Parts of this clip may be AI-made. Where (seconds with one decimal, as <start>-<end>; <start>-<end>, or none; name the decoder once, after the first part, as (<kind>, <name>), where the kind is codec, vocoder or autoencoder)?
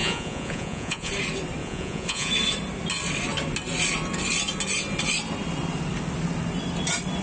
0.0-1.1 (vocoder, Vocos); 1.6-2.3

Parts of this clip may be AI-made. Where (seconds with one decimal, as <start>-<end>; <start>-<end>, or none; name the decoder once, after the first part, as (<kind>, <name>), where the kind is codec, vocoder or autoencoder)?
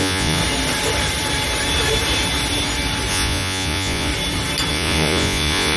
0.0-0.4 (vocoder, Vocos); 3.1-4.1; 4.7-5.8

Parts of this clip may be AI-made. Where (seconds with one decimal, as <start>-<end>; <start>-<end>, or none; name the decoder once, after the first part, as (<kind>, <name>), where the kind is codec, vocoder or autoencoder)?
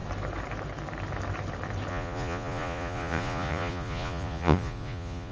1.9-5.3 (vocoder, Vocos)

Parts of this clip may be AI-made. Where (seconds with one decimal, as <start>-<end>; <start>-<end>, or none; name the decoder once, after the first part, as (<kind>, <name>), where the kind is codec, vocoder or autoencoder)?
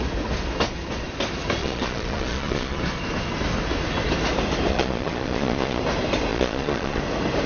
1.6-2.8 (vocoder, Vocos); 4.7-5.8; 6.3-7.0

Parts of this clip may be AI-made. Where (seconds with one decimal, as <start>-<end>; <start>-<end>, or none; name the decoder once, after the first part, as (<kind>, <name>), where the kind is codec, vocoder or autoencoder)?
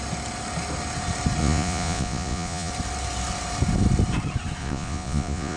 1.4-2.7 (vocoder, Vocos); 4.6-5.6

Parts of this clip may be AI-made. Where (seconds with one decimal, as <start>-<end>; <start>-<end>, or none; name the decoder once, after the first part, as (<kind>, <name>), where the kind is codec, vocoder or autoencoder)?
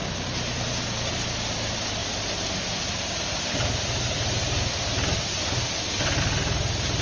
none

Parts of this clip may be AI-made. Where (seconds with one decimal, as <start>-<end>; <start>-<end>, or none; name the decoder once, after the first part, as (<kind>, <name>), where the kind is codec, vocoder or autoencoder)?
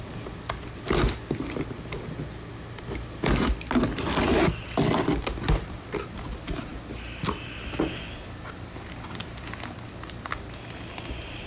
none